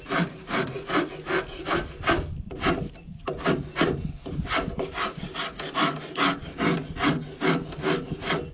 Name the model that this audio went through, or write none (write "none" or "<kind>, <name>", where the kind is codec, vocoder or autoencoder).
none